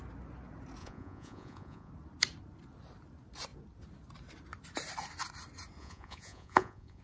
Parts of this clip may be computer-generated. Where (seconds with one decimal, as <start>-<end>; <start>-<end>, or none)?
0.8-1.9; 5.8-7.0